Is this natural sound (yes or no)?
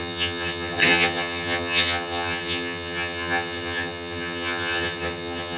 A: no